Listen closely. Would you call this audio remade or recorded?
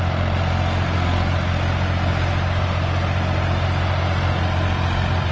recorded